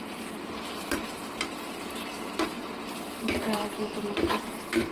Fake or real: fake